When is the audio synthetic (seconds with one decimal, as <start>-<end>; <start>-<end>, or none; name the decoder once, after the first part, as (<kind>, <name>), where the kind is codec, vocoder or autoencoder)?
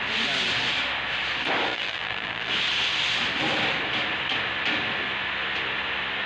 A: 1.7-2.5 (vocoder, BigVGAN v2)